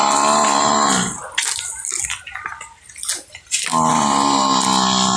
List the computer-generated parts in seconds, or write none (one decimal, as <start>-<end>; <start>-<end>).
none